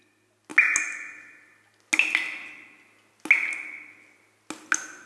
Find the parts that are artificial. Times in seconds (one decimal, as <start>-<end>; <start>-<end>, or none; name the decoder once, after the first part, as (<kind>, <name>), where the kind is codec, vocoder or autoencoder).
none